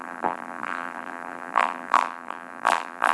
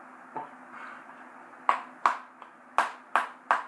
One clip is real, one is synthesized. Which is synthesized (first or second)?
first